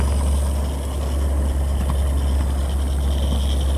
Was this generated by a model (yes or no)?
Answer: no